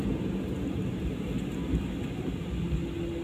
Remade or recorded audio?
recorded